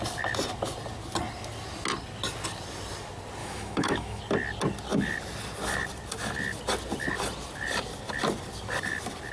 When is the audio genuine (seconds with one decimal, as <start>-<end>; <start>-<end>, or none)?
0.0-3.4; 4.2-9.3